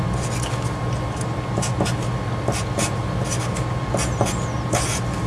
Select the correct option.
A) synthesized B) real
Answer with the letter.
B